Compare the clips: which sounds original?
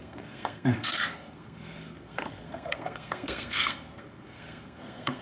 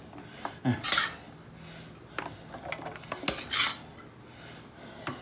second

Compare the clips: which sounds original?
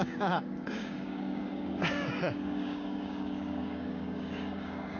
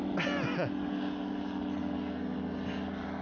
second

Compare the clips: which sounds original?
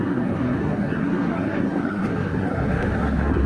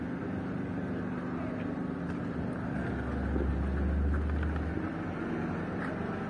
second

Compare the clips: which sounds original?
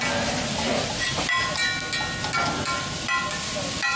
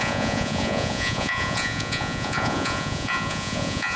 first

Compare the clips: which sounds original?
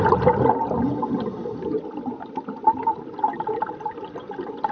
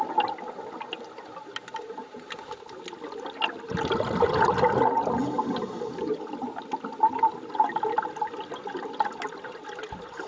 second